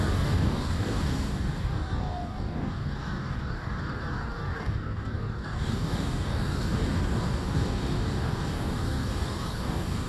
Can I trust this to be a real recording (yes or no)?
no